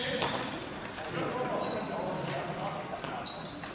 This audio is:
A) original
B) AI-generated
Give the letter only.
A